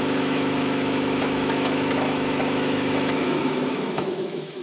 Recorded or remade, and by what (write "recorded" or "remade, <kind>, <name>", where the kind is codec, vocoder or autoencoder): remade, autoencoder, DAC-VAE